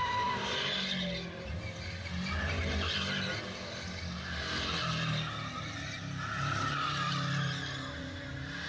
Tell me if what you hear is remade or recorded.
recorded